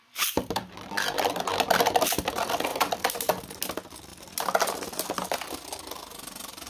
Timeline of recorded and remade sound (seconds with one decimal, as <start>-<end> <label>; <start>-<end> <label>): 0.0-1.3 remade; 1.3-2.7 recorded; 2.7-3.2 remade; 3.2-6.7 recorded